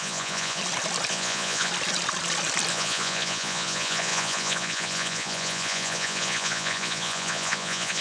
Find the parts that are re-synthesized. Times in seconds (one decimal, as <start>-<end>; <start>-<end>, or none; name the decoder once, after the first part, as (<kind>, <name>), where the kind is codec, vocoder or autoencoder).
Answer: 0.0-0.6 (vocoder, Vocos); 1.1-1.7; 2.7-8.0